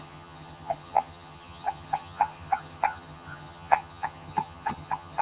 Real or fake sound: fake